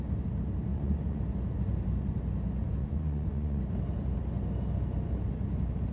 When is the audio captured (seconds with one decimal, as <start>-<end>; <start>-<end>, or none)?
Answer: 0.0-0.7; 1.2-2.8; 3.6-5.9